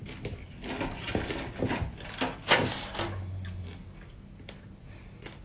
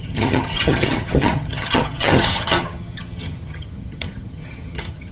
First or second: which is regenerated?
second